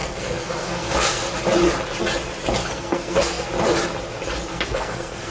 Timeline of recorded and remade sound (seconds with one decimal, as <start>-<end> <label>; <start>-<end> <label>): 0.0-1.2 remade; 1.2-2.6 recorded; 2.6-3.5 remade; 3.5-4.5 recorded; 4.5-5.3 remade